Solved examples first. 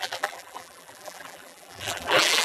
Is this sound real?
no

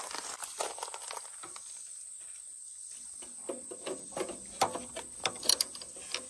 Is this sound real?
yes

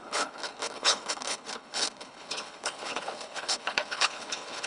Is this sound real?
no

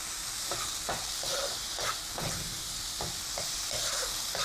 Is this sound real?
yes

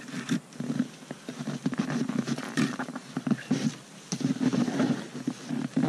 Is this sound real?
yes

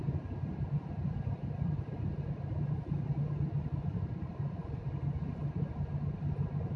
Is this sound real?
yes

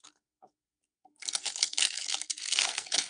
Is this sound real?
no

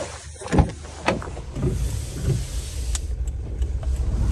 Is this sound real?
yes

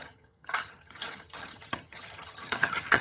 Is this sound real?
no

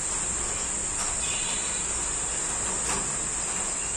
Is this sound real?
yes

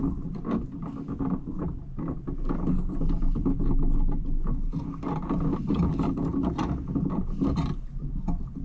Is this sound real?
yes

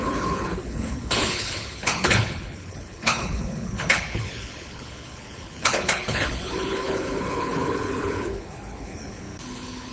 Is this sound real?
no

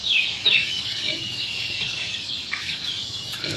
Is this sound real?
no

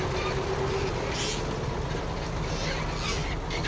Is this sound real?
yes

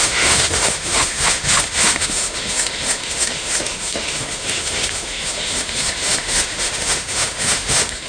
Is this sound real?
no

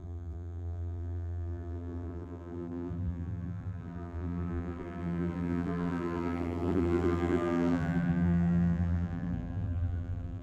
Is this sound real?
no